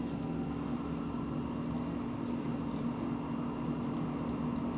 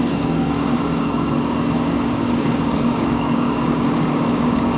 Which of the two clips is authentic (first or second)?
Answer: first